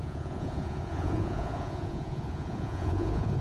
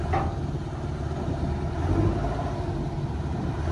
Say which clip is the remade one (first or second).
first